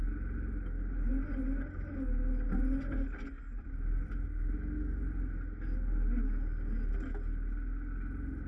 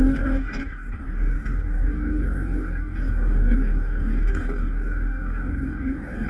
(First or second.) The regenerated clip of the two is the second